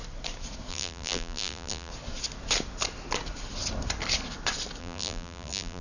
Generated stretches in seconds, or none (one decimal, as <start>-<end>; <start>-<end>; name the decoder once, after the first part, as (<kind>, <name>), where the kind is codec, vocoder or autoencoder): 0.7-1.9 (vocoder, BigVGAN v2); 4.8-5.8